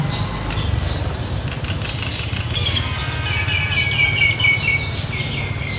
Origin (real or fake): real